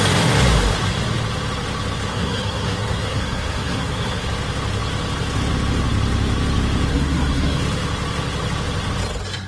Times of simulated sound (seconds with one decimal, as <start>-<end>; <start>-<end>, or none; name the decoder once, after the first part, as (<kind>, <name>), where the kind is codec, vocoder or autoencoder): 2.1-4.3 (codec, SNAC); 6.9-7.6